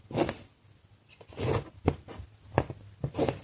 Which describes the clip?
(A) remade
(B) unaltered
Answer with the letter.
B